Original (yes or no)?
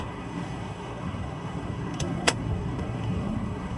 no